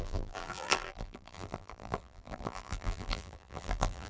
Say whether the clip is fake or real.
fake